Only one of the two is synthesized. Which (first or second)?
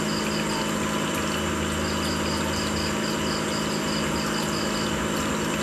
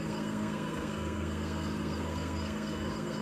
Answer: second